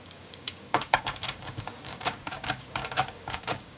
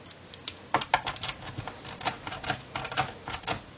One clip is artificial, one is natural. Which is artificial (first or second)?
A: first